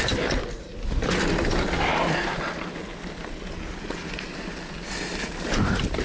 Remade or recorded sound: recorded